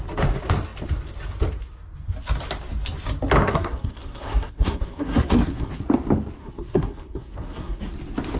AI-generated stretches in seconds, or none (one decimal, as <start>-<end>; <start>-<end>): 3.5-5.7; 6.4-7.9